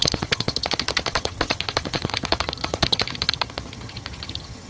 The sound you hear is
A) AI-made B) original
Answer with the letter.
A